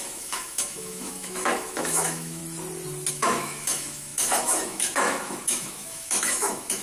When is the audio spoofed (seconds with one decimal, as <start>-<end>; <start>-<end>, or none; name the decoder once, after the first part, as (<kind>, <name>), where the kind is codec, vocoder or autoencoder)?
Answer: 0.0-2.4 (autoencoder, DAC-VAE); 3.1-6.8